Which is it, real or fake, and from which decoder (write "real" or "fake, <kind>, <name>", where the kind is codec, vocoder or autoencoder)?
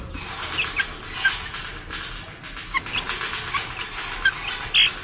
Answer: real